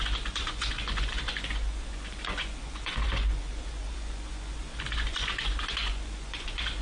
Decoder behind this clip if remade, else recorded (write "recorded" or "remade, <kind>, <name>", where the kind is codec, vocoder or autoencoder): remade, vocoder, Vocos